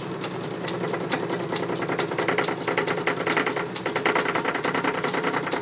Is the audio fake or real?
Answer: fake